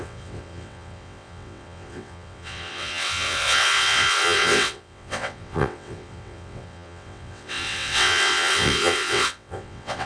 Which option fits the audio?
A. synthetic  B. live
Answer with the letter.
A